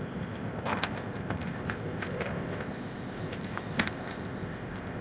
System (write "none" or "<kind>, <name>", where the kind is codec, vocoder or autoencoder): codec, ZipCodec